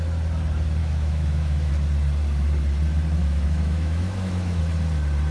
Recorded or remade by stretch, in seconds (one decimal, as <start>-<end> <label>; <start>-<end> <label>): 0.0-0.8 recorded; 0.8-1.7 remade; 1.7-3.2 recorded; 3.2-4.6 remade; 4.6-5.3 recorded